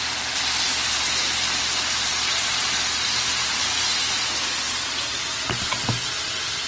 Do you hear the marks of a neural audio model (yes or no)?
no